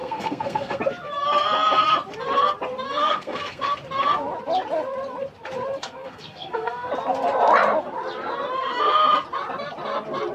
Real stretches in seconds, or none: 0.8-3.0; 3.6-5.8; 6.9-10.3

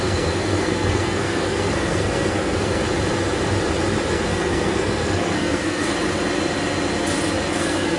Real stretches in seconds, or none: 2.8-4.1; 5.9-7.5

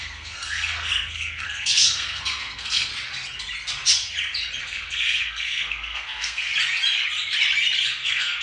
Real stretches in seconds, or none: 2.9-4.6; 6.5-7.9